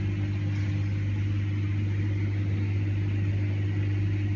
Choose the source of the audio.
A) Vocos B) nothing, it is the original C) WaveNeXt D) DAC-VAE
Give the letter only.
B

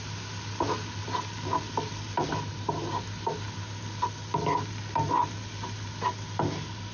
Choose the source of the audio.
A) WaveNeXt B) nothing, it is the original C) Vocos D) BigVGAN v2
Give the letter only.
B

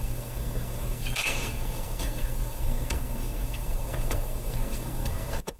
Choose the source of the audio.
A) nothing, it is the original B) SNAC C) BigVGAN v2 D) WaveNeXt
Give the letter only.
B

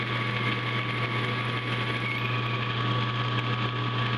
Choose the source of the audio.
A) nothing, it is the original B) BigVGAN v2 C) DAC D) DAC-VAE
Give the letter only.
A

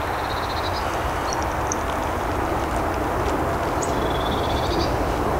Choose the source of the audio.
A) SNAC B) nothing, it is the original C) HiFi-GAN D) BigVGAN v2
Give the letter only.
B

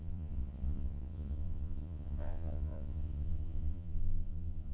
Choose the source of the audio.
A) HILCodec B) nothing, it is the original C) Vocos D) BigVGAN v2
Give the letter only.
C